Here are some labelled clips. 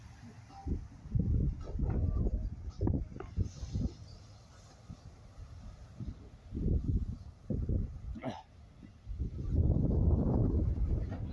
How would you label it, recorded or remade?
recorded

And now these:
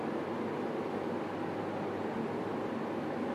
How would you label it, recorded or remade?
recorded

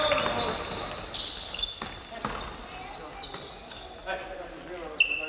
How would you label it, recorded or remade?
recorded